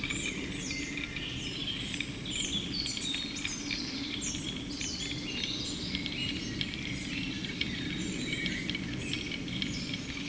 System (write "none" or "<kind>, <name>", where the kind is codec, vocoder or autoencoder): none